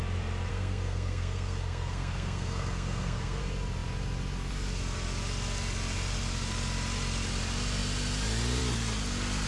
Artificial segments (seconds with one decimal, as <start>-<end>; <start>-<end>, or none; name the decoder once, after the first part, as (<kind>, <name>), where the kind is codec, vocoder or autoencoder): 0.5-3.4 (codec, SNAC)